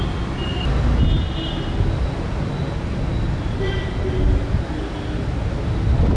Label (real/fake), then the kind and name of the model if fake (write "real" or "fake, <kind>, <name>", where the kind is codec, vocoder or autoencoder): real